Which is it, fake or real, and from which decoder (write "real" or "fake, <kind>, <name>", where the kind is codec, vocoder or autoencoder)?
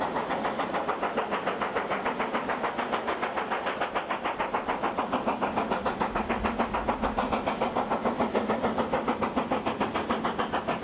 real